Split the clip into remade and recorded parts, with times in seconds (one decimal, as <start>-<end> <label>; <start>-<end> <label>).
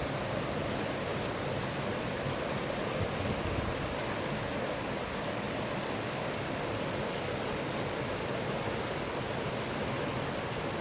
0.0-10.8 recorded